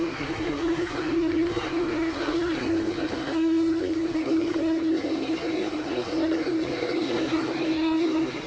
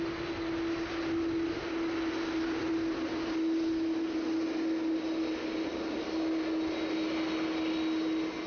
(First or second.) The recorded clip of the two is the second